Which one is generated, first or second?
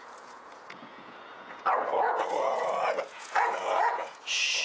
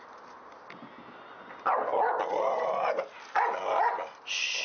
first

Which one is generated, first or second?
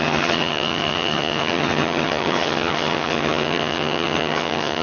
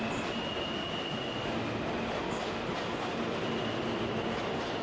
first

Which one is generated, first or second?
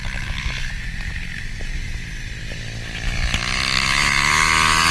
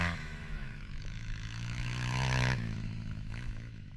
second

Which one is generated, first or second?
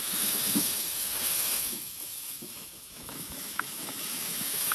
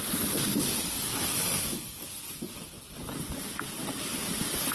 first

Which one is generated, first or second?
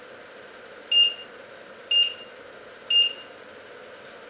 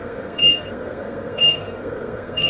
second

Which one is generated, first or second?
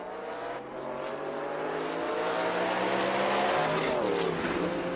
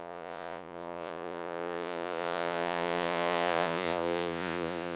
second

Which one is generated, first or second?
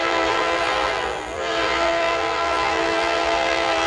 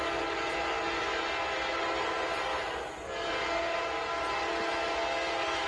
first